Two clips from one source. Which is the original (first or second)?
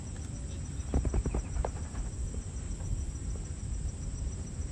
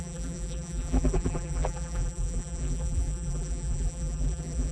first